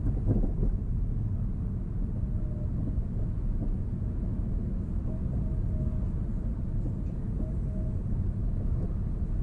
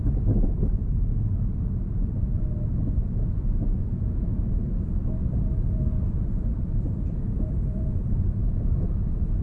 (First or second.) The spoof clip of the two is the second